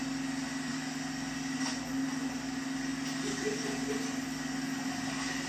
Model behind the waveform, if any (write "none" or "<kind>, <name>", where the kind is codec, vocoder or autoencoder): none